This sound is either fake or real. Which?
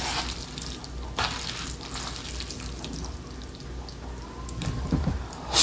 real